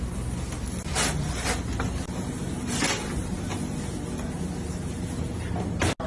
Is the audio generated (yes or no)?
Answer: no